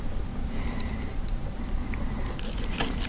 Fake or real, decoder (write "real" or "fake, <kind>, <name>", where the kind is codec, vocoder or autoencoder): real